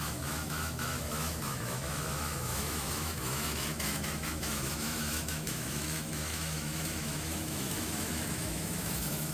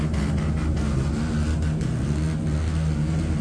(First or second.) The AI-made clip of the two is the first